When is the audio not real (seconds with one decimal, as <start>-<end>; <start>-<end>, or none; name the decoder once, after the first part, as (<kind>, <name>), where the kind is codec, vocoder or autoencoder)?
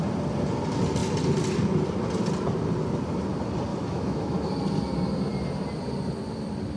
3.7-4.5 (autoencoder, DAC-VAE)